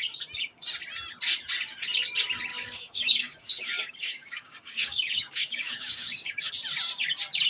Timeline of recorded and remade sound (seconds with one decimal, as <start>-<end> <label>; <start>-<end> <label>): 0.0-2.5 recorded; 2.5-6.5 remade; 6.5-7.5 recorded